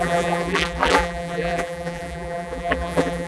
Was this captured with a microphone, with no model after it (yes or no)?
no